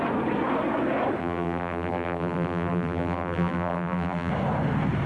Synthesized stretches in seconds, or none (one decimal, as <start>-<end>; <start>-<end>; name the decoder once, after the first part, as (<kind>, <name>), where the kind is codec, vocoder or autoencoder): 1.2-4.3 (vocoder, BigVGAN v2)